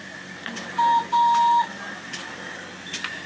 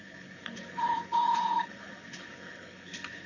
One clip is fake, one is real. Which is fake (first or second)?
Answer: second